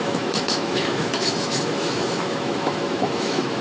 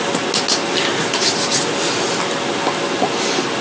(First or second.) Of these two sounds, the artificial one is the first